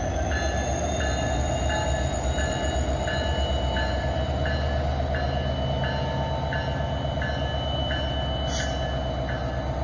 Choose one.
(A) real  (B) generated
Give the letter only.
A